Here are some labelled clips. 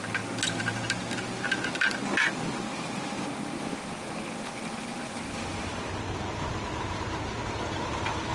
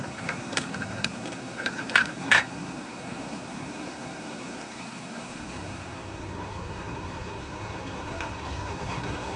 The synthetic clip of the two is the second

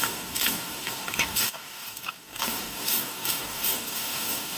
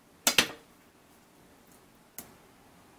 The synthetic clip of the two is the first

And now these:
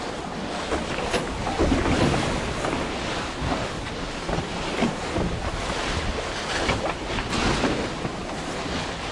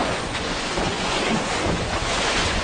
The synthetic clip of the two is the second